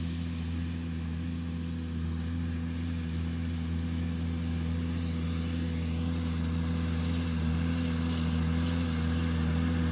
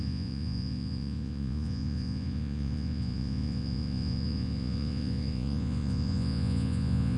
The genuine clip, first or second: first